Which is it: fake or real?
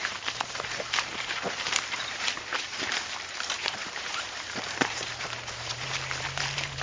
fake